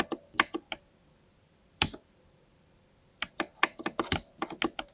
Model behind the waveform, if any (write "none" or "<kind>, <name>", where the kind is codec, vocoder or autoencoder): none